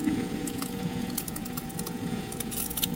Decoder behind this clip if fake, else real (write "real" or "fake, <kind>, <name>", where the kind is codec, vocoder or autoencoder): fake, vocoder, Vocos